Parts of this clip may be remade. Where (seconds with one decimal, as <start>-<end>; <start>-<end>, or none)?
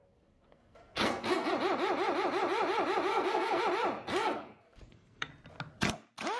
0.0-1.5; 3.1-3.6; 4.2-5.3